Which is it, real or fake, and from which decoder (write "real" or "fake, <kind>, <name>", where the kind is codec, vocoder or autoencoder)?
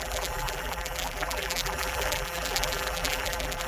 fake, vocoder, BigVGAN v2